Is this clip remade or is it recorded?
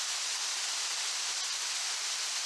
recorded